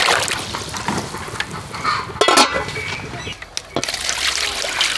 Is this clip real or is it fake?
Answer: real